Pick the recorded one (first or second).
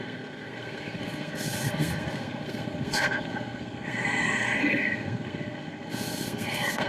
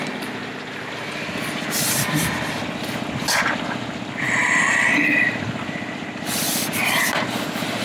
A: second